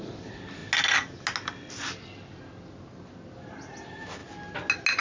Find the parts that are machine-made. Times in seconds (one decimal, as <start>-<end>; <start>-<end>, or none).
none